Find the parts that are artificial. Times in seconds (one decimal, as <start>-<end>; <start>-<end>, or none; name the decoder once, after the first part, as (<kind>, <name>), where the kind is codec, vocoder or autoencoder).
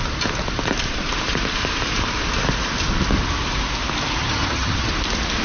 4.2-4.9 (vocoder, HiFi-GAN)